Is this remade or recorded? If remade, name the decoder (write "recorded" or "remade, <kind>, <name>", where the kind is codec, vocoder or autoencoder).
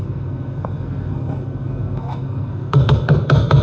remade, codec, SNAC